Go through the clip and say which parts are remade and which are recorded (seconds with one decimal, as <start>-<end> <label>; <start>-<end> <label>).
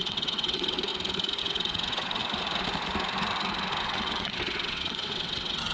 0.0-0.9 remade; 0.9-1.4 recorded; 1.4-2.2 remade; 2.2-3.8 recorded; 3.8-5.7 remade